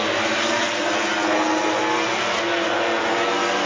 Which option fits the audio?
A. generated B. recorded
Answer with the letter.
B